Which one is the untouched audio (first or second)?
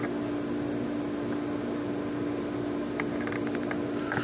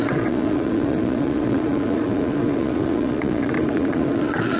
first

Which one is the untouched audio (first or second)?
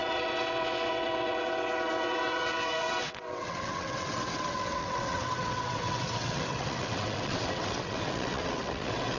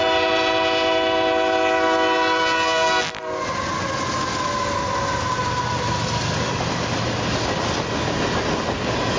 second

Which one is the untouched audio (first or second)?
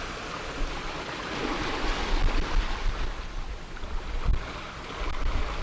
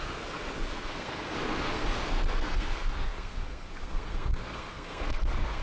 first